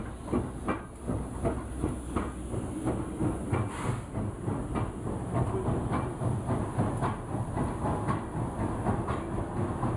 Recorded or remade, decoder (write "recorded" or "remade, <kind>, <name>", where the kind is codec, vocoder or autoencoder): recorded